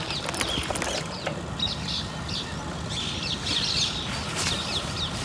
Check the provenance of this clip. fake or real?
real